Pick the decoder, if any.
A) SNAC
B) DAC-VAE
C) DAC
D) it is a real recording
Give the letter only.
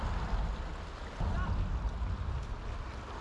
D